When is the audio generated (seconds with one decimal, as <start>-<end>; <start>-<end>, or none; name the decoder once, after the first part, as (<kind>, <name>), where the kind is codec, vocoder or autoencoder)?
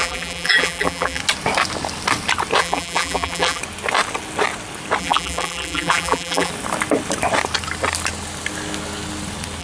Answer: 0.0-1.2 (vocoder, BigVGAN v2); 2.6-3.6; 5.0-6.5